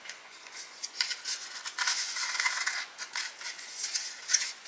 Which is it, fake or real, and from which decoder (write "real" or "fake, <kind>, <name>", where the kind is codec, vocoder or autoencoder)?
fake, vocoder, Vocos